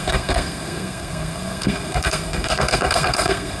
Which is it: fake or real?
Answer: fake